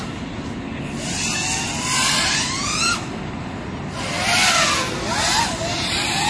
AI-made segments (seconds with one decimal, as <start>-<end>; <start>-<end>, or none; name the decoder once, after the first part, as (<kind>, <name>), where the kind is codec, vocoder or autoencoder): none